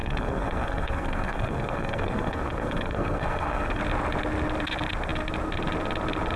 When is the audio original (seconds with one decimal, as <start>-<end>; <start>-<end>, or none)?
3.8-6.4